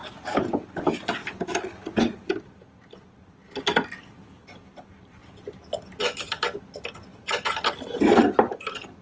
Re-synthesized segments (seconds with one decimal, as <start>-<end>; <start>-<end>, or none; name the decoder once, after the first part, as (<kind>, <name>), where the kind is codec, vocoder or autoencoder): 0.0-1.2 (vocoder, BigVGAN v2); 4.6-5.2; 6.0-9.0